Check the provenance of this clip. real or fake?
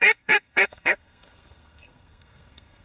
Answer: fake